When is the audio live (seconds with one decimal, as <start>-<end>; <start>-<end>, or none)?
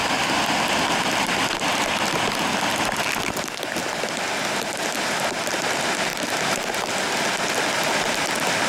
0.0-6.1; 6.9-8.7